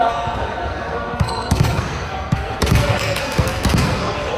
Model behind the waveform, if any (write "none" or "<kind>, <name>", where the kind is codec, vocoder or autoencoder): codec, SNAC